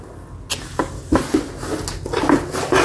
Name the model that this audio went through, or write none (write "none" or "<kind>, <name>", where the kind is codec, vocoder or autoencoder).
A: none